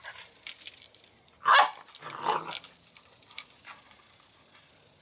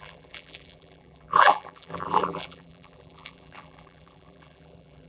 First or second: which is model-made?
second